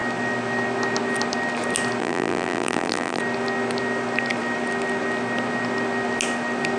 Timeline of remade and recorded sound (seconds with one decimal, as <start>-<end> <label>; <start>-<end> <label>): 0.0-2.0 recorded; 2.0-3.2 remade; 3.2-6.8 recorded